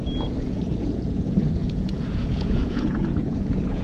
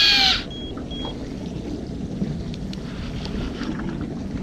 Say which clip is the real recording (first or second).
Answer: second